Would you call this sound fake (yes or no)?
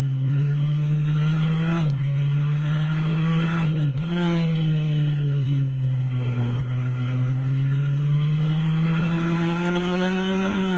yes